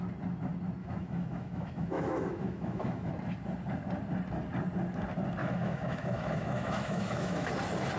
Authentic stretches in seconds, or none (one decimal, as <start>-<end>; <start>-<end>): 0.0-0.8; 3.1-5.4; 7.5-8.0